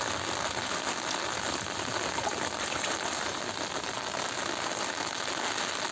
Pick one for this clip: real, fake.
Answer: real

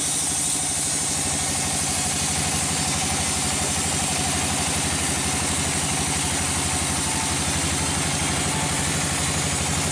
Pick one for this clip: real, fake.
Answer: real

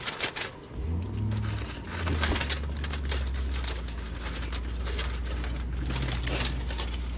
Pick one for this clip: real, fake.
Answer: real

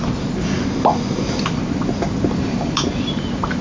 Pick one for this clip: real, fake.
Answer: real